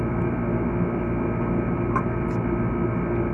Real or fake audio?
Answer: real